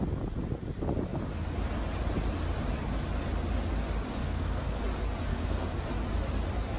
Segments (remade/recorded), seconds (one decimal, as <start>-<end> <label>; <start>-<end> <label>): 0.0-4.2 recorded; 4.2-4.8 remade; 4.8-5.3 recorded; 5.3-5.8 remade; 5.8-6.8 recorded